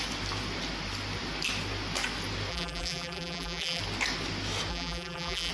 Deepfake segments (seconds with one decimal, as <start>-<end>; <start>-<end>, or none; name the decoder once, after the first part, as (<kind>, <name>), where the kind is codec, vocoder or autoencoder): 2.5-3.8 (vocoder, BigVGAN v2); 4.7-5.5